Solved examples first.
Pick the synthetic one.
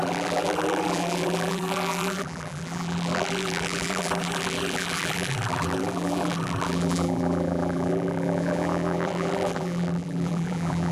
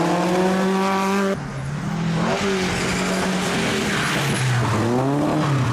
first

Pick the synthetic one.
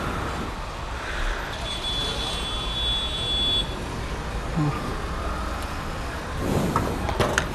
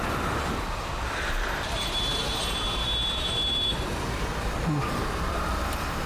second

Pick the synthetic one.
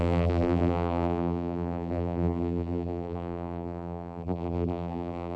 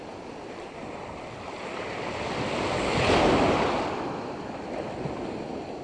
first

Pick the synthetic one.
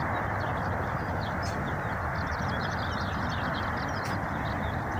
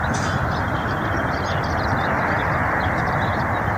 second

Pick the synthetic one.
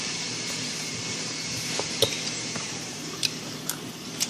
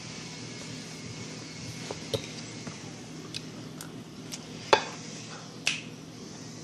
first